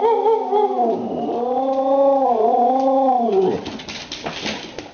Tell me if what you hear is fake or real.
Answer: real